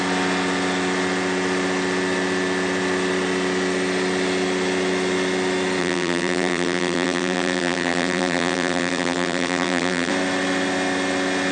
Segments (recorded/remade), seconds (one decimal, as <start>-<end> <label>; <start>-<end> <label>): 0.0-5.8 recorded; 5.8-10.1 remade; 10.1-11.5 recorded